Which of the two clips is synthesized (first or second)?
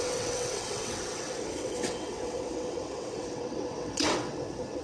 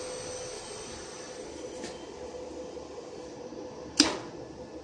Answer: first